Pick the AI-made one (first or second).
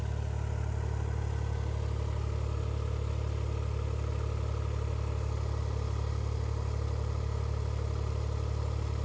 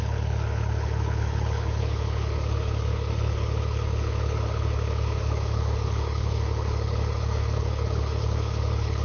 second